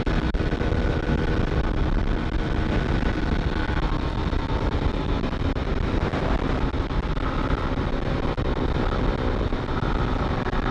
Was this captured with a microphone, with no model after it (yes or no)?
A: yes